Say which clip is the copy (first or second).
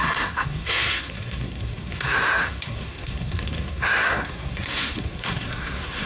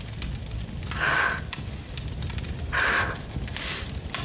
first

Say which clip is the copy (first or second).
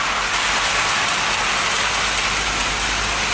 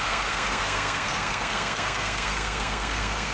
second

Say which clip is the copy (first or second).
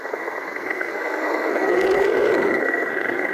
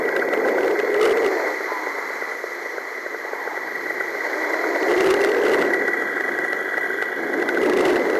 first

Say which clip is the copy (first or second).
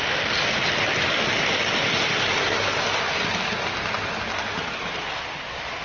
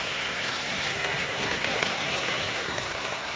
second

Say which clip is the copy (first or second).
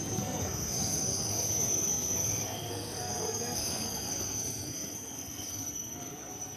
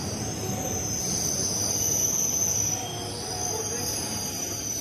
first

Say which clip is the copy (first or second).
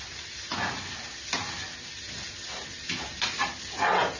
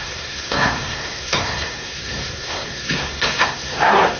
second